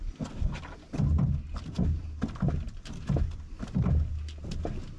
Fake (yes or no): no